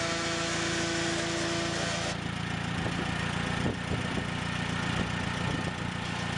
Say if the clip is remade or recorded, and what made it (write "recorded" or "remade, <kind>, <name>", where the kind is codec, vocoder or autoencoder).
recorded